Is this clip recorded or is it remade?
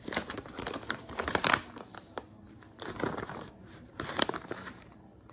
remade